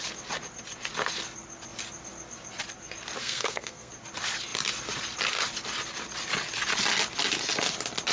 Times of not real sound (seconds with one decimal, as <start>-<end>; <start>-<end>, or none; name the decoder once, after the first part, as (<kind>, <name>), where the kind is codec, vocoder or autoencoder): 3.2-3.9 (codec, SNAC)